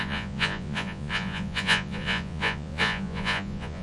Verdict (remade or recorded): remade